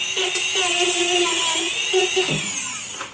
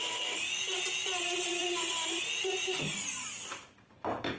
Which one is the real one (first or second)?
first